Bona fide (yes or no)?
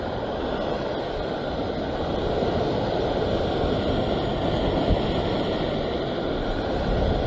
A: yes